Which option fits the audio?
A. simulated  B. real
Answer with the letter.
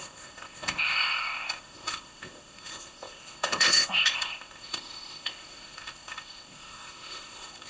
A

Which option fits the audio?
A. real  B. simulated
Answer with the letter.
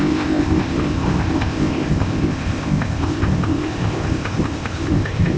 B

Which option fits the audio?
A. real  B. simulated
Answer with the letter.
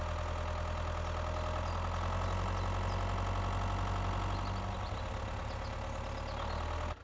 A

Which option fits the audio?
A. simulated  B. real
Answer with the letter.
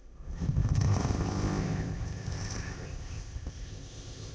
A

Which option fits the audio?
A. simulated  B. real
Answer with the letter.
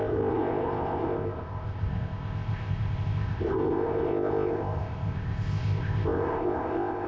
A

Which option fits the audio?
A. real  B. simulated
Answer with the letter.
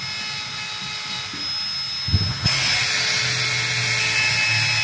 A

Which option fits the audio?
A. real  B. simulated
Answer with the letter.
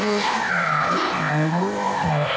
B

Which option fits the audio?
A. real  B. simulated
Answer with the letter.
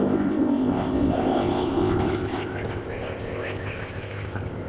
B